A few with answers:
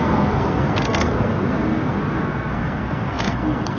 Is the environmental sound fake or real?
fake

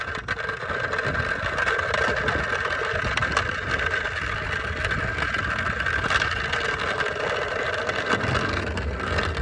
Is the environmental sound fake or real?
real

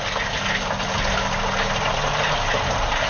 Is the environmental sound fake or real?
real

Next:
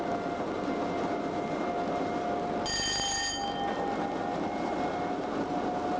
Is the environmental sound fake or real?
real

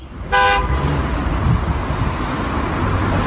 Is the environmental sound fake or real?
fake